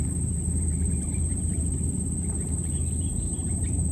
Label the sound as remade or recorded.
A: remade